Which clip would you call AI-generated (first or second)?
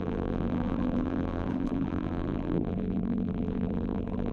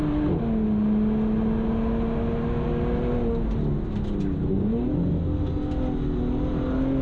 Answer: first